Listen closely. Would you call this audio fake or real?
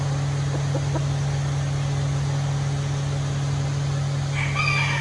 real